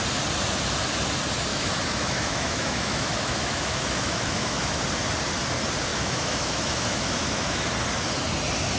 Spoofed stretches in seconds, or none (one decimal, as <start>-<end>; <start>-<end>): 1.5-4.8; 5.9-7.7